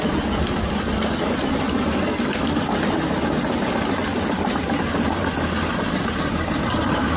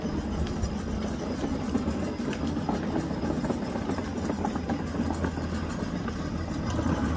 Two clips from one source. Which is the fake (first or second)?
first